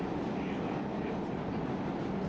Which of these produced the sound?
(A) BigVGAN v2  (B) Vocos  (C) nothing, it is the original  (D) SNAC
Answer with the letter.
C